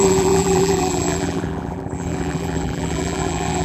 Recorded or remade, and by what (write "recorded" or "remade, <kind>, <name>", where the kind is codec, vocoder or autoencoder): remade, vocoder, BigVGAN v2